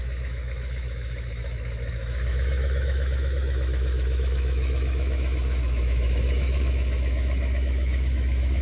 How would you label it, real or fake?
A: fake